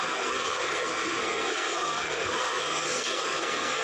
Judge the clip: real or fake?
fake